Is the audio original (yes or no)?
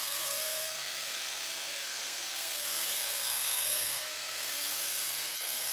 no